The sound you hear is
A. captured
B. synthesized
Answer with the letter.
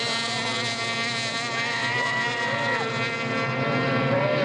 A